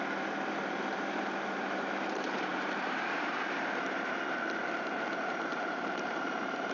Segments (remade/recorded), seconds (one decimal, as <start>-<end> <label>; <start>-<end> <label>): 0.0-0.6 recorded; 0.6-4.6 remade; 4.6-5.5 recorded; 5.5-6.7 remade